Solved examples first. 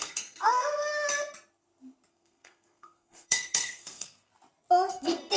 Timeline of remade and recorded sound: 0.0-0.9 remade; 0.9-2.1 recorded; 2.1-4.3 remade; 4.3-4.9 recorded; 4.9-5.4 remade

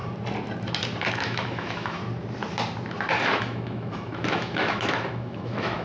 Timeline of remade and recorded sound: 0.0-1.1 recorded; 1.1-2.0 remade; 2.0-3.4 recorded; 3.4-5.8 remade

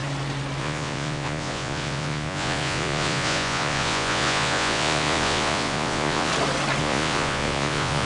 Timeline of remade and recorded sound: 0.0-0.6 recorded; 0.6-6.3 remade; 6.3-6.8 recorded; 6.8-8.1 remade